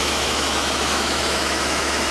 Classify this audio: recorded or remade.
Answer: remade